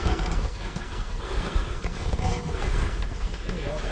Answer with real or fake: fake